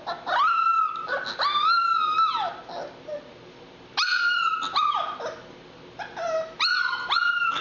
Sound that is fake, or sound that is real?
real